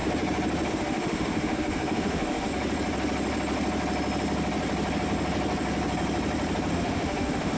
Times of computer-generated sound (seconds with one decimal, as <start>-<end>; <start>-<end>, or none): 0.7-2.5; 6.7-7.6